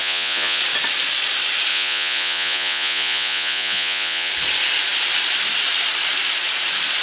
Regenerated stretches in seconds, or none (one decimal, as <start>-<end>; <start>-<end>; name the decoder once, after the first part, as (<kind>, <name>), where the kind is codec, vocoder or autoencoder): 0.0-0.6 (vocoder, Vocos); 1.7-4.3